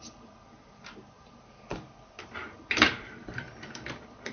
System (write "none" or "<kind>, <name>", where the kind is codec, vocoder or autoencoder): vocoder, BigVGAN v2